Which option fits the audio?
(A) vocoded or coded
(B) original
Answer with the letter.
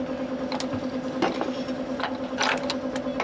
B